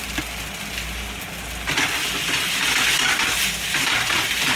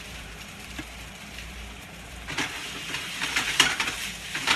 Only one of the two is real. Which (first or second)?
first